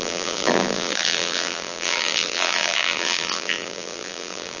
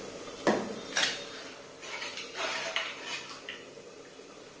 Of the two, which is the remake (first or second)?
first